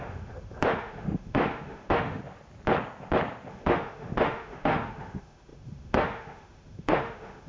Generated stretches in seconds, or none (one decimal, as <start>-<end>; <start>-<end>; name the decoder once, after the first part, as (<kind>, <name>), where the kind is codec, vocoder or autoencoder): 0.0-2.2 (autoencoder, DAC-VAE); 3.5-7.5